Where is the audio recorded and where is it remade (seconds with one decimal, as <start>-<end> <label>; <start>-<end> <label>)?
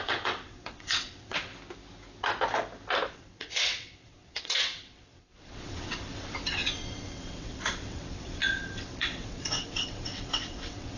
0.0-1.5 remade; 1.5-3.1 recorded; 3.1-11.0 remade